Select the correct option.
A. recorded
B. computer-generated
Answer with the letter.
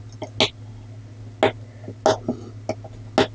A